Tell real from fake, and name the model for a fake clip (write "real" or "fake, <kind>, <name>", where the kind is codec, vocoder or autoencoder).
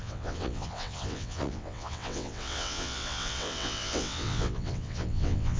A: fake, vocoder, WaveNeXt